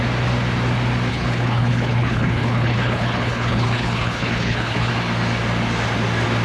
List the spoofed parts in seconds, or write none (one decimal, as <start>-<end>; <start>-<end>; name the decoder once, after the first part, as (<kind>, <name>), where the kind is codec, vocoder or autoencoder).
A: 1.1-4.9 (codec, HILCodec)